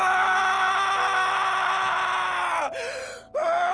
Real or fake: real